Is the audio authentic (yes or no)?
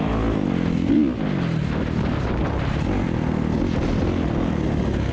yes